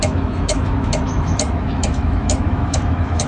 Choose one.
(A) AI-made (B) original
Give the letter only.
A